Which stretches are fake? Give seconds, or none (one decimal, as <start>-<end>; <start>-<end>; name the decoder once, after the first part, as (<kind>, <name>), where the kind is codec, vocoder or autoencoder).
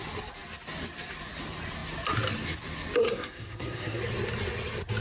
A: 3.0-4.0 (codec, SNAC)